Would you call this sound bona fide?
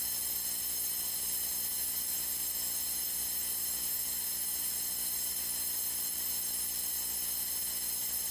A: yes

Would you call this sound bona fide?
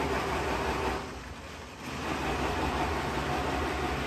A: yes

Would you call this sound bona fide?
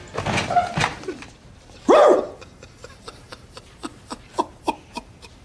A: no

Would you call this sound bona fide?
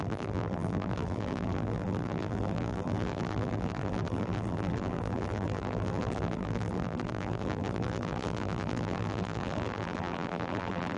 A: no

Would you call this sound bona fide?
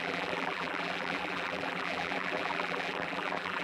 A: no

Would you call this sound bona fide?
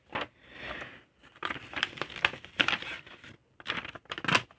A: yes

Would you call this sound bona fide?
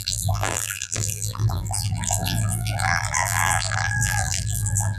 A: no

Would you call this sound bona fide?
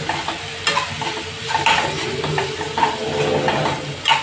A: yes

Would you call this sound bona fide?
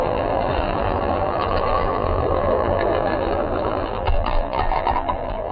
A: no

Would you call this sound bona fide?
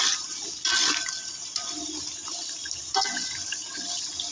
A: no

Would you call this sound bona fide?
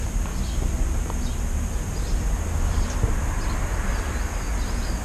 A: yes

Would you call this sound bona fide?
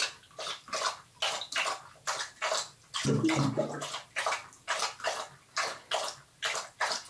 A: yes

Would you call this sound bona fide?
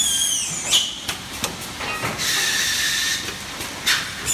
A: yes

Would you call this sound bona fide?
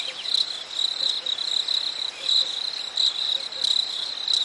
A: yes